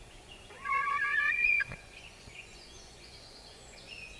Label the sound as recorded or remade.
remade